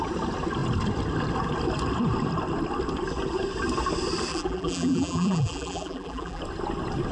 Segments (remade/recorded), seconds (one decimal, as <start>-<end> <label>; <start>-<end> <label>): 0.0-4.3 recorded; 4.3-6.4 remade; 6.4-7.1 recorded

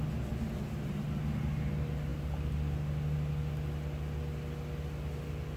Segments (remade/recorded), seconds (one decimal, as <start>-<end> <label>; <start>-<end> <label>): 0.0-5.6 recorded

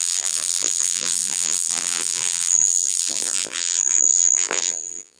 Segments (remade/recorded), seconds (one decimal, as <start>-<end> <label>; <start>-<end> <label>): 0.0-5.2 remade